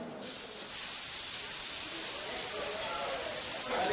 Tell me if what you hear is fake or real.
real